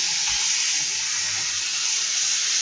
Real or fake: real